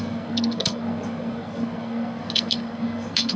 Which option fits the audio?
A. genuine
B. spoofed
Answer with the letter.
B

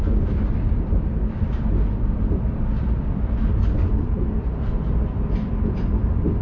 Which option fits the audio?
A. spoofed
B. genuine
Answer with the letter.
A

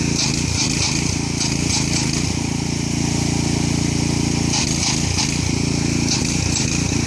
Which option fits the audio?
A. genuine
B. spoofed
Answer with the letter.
A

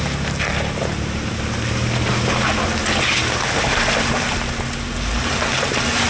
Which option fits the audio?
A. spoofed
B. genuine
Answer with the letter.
B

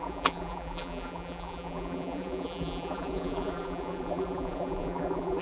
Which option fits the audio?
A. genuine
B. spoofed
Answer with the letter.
B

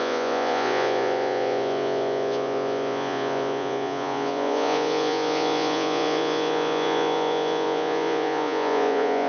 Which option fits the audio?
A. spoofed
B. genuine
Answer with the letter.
A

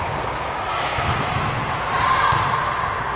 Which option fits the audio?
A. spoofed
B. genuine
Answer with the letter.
B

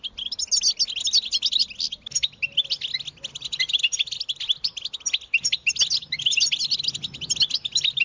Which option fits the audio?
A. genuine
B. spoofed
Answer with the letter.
A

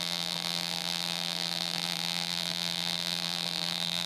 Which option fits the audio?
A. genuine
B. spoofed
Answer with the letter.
B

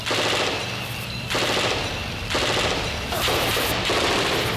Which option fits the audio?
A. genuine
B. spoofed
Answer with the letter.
A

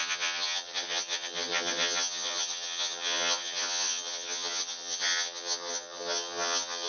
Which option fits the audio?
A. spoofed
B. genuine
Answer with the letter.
A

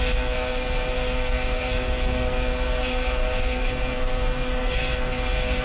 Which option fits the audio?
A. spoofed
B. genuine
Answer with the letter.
A